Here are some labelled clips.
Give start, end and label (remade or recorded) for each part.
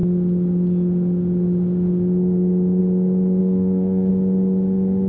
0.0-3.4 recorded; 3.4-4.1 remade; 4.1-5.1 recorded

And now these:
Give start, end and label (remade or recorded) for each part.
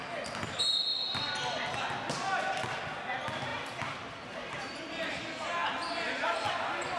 0.0-7.0 recorded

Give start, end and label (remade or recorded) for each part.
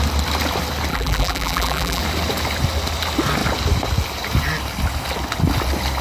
0.0-0.9 recorded; 0.9-2.0 remade; 2.0-6.0 recorded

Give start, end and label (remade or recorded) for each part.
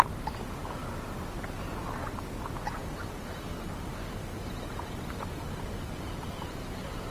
0.0-2.8 recorded; 2.8-7.1 remade